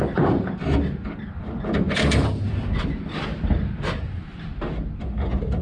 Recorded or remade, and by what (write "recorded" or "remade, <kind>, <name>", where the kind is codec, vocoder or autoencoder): recorded